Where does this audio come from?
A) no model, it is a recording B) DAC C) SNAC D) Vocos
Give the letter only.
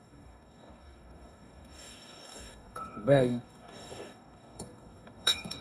B